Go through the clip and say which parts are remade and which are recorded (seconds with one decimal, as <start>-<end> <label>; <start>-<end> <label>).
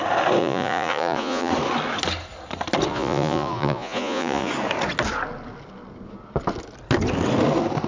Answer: 0.0-0.4 recorded; 0.4-1.5 remade; 1.5-2.9 recorded; 2.9-4.5 remade; 4.5-7.9 recorded